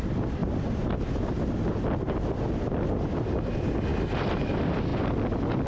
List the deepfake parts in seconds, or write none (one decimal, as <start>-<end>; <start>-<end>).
none